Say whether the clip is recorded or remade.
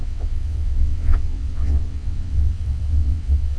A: remade